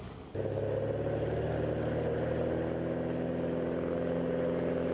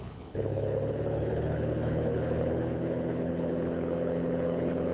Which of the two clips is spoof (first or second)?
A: second